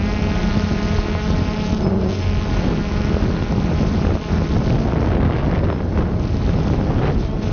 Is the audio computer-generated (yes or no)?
no